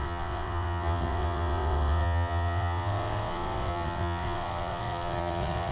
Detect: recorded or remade remade